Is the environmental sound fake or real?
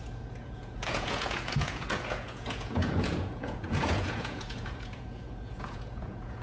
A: fake